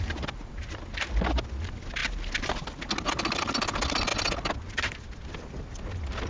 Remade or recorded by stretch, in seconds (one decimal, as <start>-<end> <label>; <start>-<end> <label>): 0.0-6.3 recorded